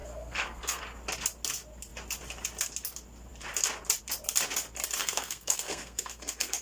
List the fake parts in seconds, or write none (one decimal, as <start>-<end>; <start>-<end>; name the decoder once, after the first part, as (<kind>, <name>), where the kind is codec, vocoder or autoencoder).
0.0-0.8 (codec, SNAC); 5.0-6.6

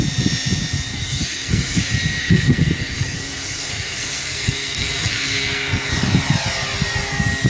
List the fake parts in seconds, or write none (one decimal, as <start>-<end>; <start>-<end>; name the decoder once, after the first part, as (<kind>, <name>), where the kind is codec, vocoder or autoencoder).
0.9-1.8 (codec, SNAC); 2.2-5.9

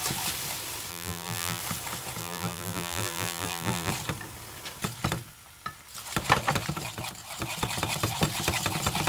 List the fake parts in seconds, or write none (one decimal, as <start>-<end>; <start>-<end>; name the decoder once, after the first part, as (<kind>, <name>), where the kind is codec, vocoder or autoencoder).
0.9-1.6 (vocoder, BigVGAN v2); 2.2-3.9

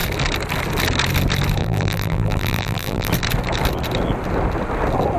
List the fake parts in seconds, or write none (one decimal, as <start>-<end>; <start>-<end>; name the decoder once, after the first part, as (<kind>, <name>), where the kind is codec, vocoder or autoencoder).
1.6-3.1 (vocoder, BigVGAN v2)

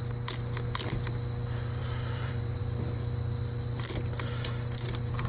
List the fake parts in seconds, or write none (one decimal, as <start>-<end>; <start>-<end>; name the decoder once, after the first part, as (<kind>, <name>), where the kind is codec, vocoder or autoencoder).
1.8-2.6 (vocoder, BigVGAN v2)

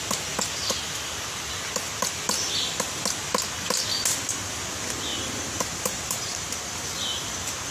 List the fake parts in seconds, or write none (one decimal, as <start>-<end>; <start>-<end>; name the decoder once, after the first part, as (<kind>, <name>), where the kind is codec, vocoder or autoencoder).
5.1-6.6 (vocoder, BigVGAN v2)

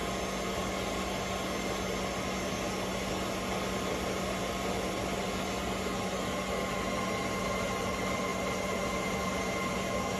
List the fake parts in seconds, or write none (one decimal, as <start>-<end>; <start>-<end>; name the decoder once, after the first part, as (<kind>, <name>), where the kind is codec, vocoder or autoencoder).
none

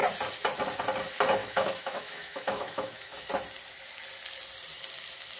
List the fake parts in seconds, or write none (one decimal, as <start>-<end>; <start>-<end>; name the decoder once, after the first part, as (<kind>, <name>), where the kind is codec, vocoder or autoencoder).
1.4-3.3 (autoencoder, DAC-VAE)